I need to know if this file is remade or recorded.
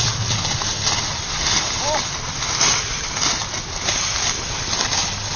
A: recorded